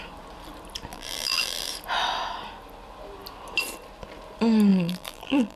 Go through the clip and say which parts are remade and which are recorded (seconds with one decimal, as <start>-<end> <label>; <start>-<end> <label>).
0.0-0.9 recorded; 0.9-1.7 remade; 1.7-4.7 recorded; 4.7-5.6 remade